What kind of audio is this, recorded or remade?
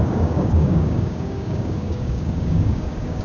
remade